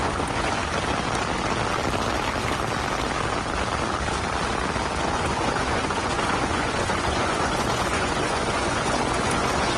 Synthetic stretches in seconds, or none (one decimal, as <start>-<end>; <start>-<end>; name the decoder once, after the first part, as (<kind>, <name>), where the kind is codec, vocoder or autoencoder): 0.0-0.6 (vocoder, Vocos); 5.0-9.8